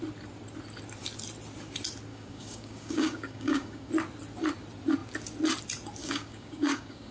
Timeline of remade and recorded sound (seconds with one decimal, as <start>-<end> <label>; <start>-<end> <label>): 0.0-2.1 recorded; 2.1-3.9 remade; 3.9-6.0 recorded; 6.0-7.1 remade